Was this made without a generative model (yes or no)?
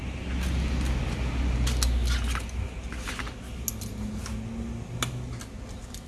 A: yes